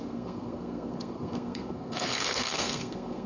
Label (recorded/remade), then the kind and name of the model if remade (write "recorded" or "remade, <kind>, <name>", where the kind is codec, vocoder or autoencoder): remade, codec, SNAC